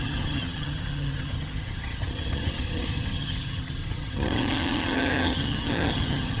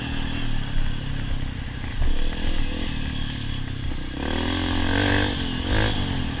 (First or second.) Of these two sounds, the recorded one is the second